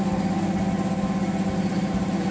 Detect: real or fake real